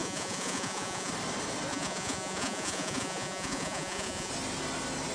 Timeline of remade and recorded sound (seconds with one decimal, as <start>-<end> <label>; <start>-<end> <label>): 0.0-1.1 remade; 1.1-1.7 recorded; 1.7-4.3 remade; 4.3-5.1 recorded